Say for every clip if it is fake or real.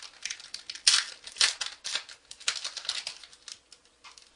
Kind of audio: real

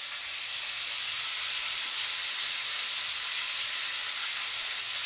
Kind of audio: real